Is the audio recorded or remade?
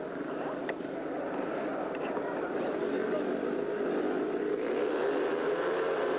recorded